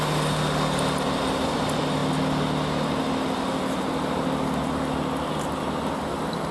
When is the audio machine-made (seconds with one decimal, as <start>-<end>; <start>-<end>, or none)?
none